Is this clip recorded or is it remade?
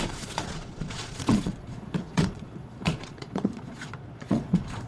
remade